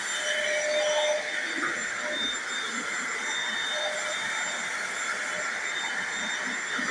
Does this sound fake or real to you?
real